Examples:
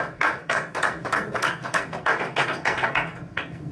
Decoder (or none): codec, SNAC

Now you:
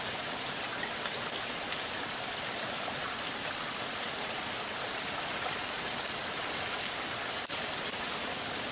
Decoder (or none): none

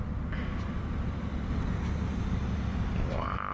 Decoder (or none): none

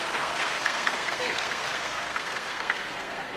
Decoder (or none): codec, SNAC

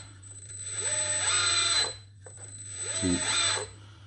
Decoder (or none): vocoder, BigVGAN v2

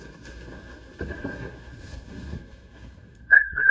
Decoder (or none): codec, SNAC